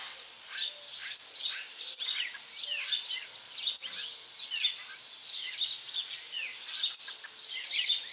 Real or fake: real